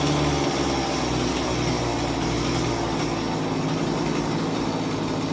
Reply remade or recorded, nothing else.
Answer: recorded